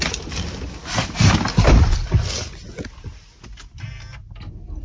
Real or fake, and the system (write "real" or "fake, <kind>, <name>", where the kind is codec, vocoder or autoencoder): real